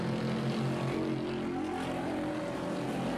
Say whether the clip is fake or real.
real